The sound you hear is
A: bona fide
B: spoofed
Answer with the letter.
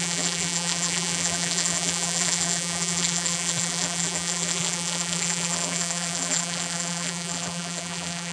B